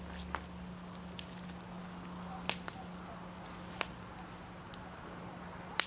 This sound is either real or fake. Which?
real